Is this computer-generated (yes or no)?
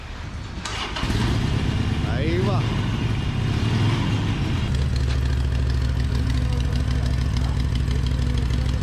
no